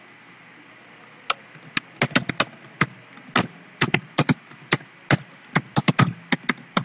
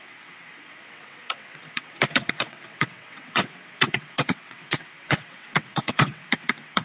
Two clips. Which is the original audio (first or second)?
first